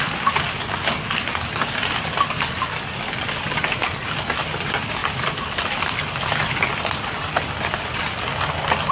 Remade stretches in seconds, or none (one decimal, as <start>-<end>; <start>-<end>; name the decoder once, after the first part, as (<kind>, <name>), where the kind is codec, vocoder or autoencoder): none